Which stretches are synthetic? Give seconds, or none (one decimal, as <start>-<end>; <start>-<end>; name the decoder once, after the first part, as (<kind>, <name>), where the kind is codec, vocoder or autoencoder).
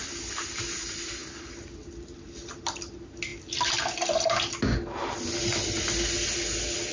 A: none